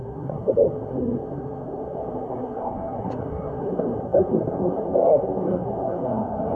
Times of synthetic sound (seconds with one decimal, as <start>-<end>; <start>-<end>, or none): 0.0-6.6